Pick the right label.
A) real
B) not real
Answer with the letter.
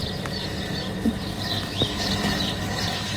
A